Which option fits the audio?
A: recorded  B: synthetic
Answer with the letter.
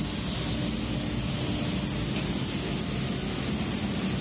A